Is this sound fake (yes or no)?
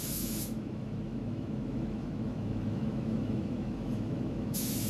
yes